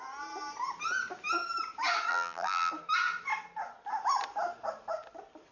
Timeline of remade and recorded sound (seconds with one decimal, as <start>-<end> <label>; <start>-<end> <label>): 0.0-2.1 recorded; 2.1-2.7 remade; 2.7-5.5 recorded